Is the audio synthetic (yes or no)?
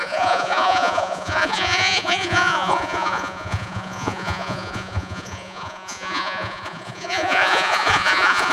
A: yes